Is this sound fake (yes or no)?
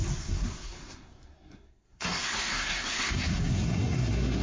yes